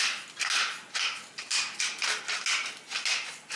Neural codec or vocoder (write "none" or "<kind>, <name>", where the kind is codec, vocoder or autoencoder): none